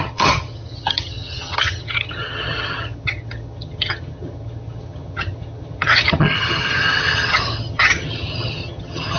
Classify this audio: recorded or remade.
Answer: remade